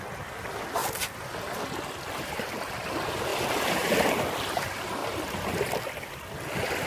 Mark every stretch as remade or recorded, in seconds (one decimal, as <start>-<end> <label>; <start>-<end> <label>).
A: 0.0-6.9 recorded